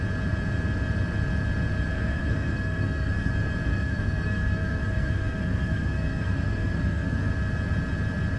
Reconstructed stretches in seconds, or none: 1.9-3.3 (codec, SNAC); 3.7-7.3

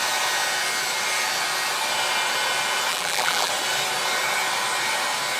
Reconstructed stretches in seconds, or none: 2.9-3.5 (vocoder, BigVGAN v2)

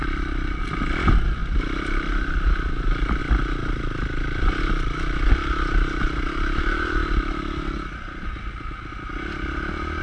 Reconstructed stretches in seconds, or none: none

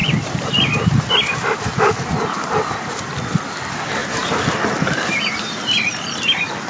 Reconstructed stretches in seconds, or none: none

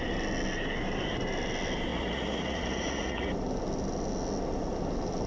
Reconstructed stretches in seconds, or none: 1.9-3.3 (vocoder, Vocos)